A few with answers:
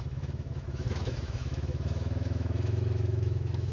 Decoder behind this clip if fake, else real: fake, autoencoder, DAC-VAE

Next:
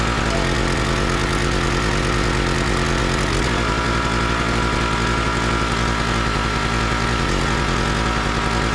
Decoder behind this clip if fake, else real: real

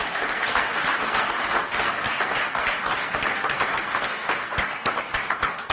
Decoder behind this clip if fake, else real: fake, codec, SNAC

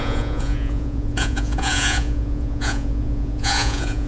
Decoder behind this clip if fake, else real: fake, vocoder, Vocos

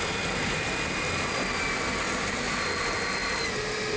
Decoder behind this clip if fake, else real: real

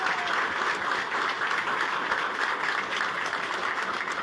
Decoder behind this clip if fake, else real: real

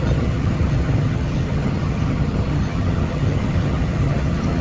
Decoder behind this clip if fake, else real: fake, vocoder, HiFi-GAN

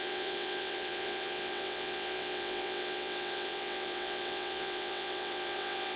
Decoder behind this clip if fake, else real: fake, vocoder, WaveNeXt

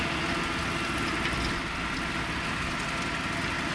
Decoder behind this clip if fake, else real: real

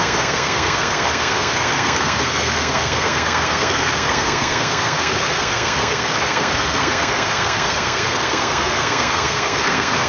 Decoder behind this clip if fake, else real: fake, codec, SNAC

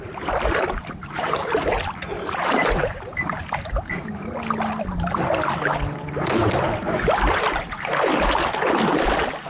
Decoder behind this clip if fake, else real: real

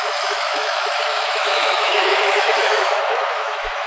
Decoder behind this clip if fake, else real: fake, autoencoder, DAC-VAE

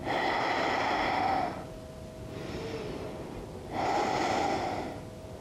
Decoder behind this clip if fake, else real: real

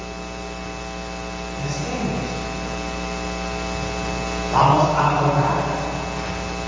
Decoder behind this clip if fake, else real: real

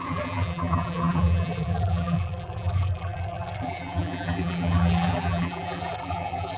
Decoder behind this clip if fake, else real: fake, vocoder, BigVGAN v2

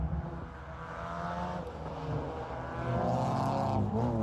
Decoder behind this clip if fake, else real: real